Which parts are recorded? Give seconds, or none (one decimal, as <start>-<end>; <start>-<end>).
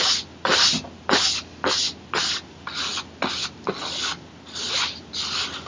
0.0-5.7